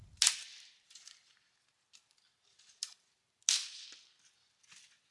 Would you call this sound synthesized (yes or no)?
no